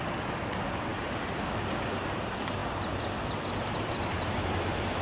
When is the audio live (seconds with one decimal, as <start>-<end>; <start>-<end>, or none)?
0.0-5.0

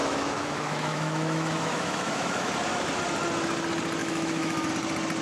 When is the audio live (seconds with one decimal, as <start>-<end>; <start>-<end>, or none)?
2.5-4.0; 4.7-5.2

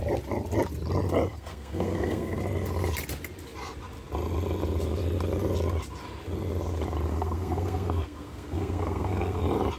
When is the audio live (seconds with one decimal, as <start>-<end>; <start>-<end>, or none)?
0.0-1.3; 2.4-7.1; 9.4-9.8

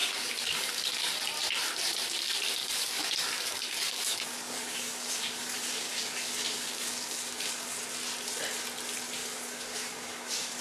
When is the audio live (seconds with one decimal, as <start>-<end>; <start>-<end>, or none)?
1.2-2.6; 7.8-9.2

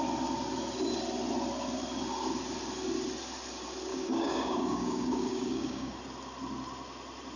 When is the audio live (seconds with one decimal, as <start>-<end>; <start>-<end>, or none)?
0.0-3.9; 6.0-7.4